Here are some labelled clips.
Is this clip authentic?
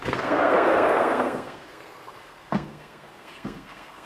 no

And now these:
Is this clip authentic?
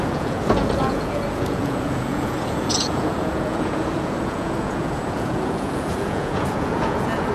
no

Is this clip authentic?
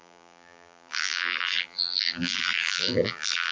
no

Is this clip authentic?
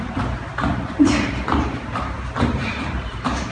no